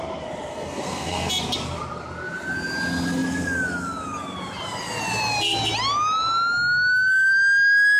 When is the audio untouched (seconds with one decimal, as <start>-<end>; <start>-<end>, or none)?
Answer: 0.0-0.5; 1.3-8.0